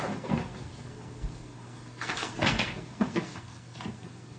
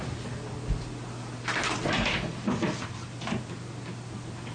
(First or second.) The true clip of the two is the second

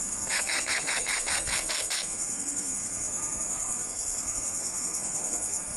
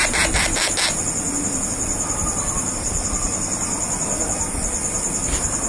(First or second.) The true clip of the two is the second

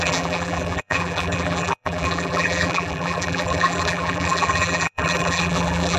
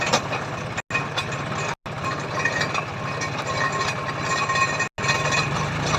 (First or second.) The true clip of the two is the second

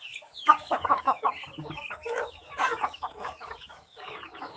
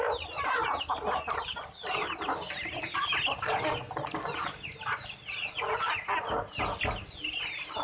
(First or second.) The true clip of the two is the second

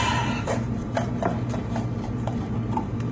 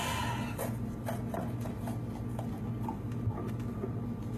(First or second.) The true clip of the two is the second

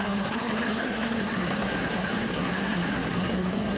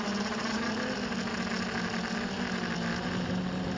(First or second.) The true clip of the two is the second